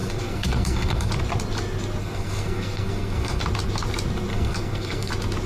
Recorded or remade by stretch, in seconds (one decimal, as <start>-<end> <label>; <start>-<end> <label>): 0.0-1.1 remade; 1.1-2.0 recorded; 2.0-3.4 remade; 3.4-4.3 recorded; 4.3-5.1 remade; 5.1-5.5 recorded